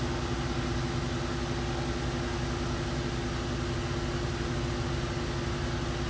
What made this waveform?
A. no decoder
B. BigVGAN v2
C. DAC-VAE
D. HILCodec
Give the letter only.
A